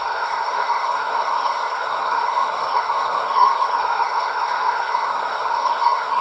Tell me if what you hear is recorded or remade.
remade